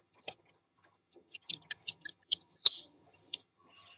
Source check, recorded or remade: remade